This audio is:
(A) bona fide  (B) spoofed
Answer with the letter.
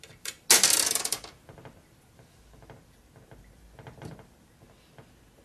A